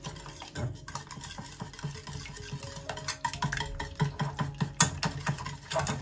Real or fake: real